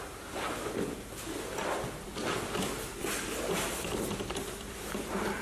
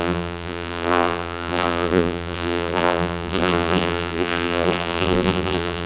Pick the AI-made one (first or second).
second